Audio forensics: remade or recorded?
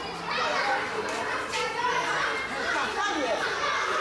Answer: recorded